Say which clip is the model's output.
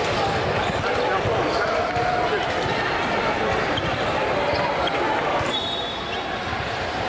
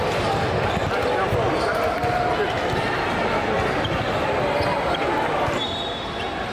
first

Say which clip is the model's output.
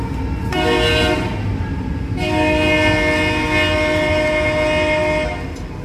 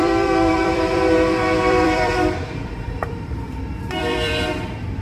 second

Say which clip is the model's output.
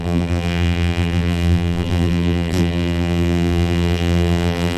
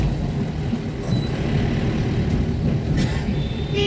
first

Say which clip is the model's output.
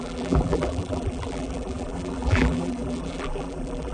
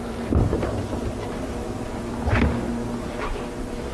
first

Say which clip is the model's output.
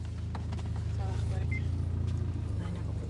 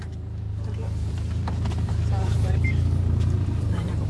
second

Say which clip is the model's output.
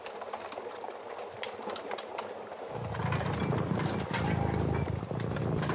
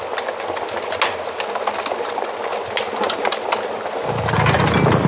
first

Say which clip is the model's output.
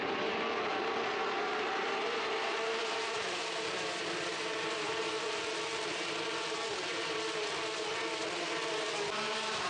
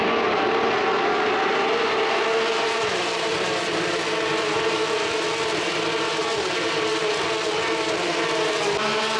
first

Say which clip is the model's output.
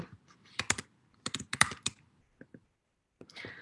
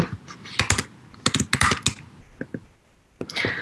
first